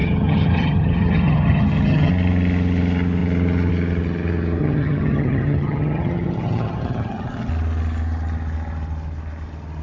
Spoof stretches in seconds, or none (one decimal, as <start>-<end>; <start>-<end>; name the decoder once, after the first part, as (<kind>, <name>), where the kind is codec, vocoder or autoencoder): 0.0-2.1 (vocoder, HiFi-GAN); 4.6-7.5